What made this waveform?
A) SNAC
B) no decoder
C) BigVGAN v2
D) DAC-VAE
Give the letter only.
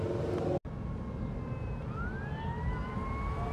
B